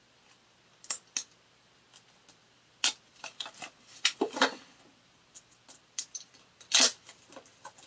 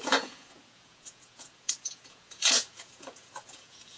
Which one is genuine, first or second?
first